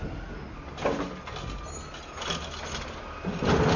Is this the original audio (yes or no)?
yes